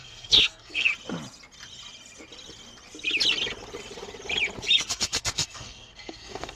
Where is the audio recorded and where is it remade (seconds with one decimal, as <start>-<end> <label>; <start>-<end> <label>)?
0.0-0.9 remade; 0.9-4.9 recorded; 4.9-6.6 remade